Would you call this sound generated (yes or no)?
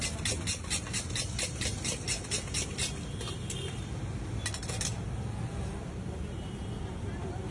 no